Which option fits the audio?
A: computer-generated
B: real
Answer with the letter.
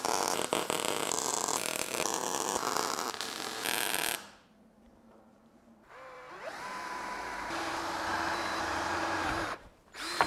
A